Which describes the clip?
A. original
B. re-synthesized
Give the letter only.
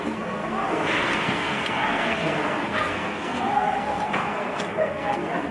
B